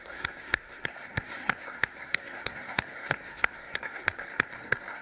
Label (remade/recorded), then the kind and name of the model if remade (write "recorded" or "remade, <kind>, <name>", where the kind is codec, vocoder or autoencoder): remade, codec, SNAC